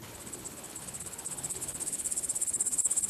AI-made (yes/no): yes